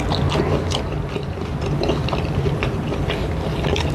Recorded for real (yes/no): yes